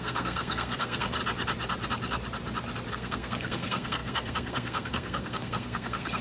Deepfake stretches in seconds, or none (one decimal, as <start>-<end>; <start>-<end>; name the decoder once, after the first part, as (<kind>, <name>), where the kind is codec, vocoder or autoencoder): 0.0-1.2 (codec, SNAC); 2.9-6.2